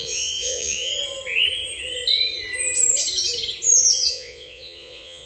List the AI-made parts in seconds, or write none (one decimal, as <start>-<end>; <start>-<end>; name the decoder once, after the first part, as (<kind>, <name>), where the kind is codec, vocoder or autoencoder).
0.0-0.9 (vocoder, Vocos); 4.1-5.3